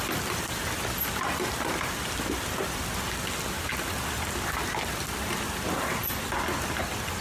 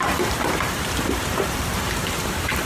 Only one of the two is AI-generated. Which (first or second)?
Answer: second